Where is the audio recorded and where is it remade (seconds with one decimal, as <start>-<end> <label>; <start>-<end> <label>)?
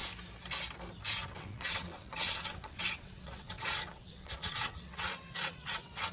0.0-1.1 recorded; 1.1-6.1 remade